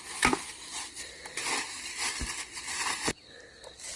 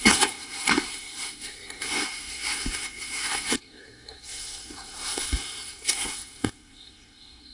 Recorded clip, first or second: first